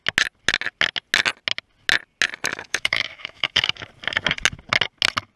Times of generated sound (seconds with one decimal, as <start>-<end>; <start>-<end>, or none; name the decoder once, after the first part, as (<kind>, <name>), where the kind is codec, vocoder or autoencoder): 2.5-3.9 (autoencoder, DAC-VAE)

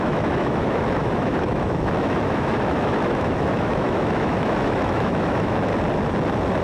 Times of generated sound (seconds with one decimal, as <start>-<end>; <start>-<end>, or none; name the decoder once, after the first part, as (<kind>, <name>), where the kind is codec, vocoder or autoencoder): 0.0-5.7 (autoencoder, DAC-VAE)

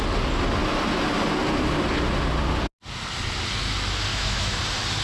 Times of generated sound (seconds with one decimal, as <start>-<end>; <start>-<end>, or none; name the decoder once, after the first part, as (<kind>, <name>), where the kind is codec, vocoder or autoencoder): 4.1-4.6 (autoencoder, DAC-VAE)

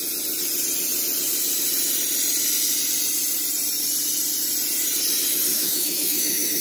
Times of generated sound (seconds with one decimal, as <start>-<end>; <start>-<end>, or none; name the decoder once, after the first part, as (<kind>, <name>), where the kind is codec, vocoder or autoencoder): 5.5-6.6 (autoencoder, DAC-VAE)